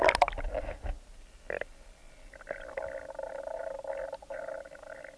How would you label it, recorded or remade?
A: recorded